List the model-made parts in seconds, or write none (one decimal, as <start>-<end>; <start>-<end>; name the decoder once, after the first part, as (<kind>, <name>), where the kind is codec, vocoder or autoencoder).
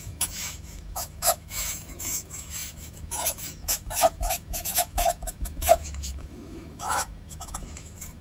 0.0-8.2 (autoencoder, DAC-VAE)